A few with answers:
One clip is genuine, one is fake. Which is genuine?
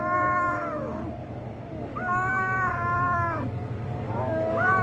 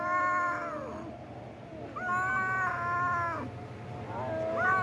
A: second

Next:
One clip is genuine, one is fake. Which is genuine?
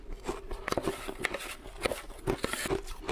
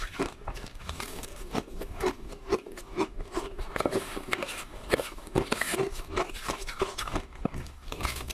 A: first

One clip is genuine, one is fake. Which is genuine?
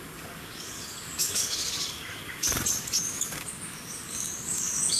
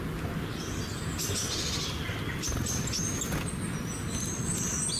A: second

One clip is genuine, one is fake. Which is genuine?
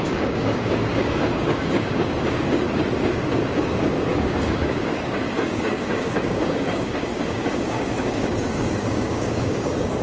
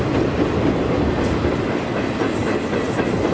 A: second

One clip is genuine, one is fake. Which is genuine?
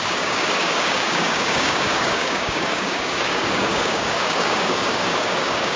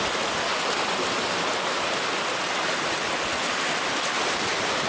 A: second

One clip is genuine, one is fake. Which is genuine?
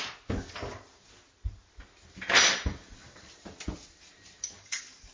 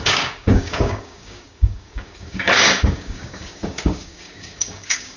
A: first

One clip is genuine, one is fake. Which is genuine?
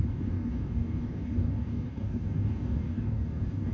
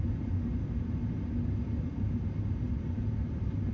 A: second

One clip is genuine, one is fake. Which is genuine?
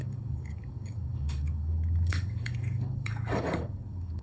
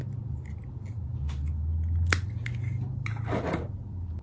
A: second